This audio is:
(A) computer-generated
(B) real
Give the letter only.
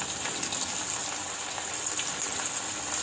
B